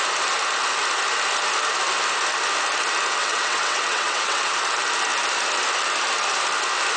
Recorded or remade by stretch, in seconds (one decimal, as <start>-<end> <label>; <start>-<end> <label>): 0.0-3.2 recorded; 3.2-4.5 remade; 4.5-7.0 recorded